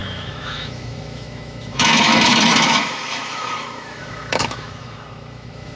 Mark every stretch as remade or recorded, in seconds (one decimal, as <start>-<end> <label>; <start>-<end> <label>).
0.0-5.8 remade